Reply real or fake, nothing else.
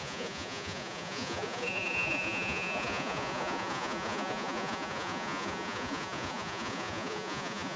fake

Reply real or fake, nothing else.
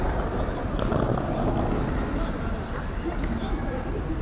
real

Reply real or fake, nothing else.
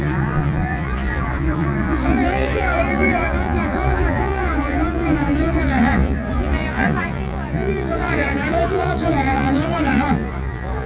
fake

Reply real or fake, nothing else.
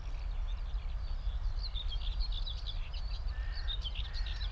real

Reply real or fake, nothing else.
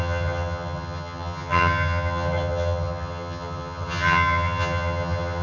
fake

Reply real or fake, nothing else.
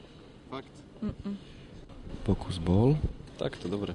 real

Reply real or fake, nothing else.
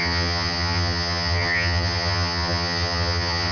fake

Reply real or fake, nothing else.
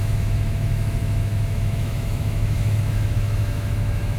fake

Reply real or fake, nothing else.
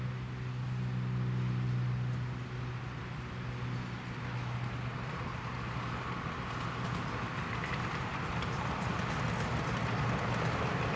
real